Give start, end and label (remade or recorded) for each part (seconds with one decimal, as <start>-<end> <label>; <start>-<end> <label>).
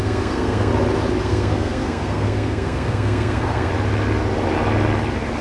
0.0-0.7 remade; 0.7-1.2 recorded; 1.2-3.7 remade; 3.7-5.4 recorded